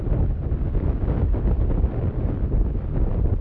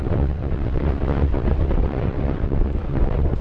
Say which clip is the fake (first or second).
second